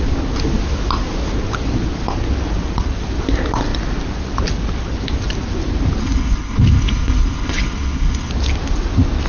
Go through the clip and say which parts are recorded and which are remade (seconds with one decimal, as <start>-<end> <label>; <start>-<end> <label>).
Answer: 0.0-6.0 recorded; 6.0-8.3 remade; 8.3-9.3 recorded